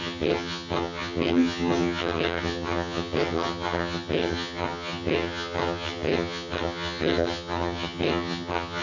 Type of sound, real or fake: fake